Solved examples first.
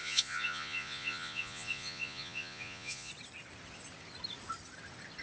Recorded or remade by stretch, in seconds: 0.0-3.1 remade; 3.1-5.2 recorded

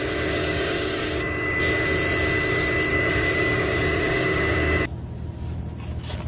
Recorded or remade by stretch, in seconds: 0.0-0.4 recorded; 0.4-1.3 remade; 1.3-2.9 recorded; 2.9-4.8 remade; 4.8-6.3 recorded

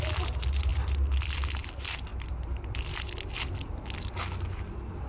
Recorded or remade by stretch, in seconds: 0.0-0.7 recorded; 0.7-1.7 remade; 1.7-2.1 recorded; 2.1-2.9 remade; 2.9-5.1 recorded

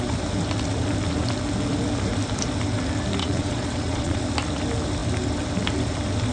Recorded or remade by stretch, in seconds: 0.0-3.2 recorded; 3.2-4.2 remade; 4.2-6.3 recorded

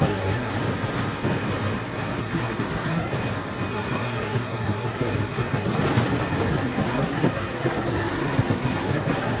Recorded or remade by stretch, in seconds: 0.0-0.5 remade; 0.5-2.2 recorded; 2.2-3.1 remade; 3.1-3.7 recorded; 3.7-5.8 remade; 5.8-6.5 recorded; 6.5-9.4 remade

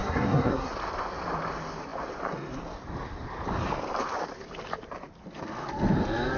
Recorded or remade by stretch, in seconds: 0.0-0.7 remade; 0.7-6.4 recorded